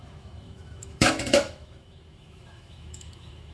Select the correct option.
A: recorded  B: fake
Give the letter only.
B